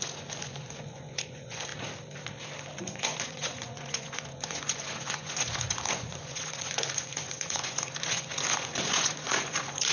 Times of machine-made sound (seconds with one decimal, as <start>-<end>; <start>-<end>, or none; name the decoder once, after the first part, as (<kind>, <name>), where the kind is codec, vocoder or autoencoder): 0.0-1.7 (vocoder, Vocos); 2.8-9.9

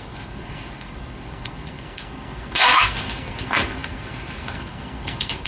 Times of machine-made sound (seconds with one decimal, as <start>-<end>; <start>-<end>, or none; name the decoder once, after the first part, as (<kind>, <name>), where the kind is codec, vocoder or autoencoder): 0.0-5.5 (codec, SNAC)